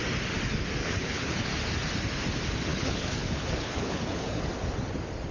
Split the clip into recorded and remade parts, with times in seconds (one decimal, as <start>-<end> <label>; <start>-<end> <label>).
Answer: 0.0-0.8 recorded; 0.8-1.5 remade; 1.5-2.7 recorded; 2.7-4.4 remade; 4.4-5.3 recorded